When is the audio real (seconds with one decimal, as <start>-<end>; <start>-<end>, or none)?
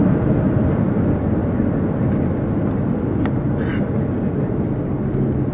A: 0.0-5.5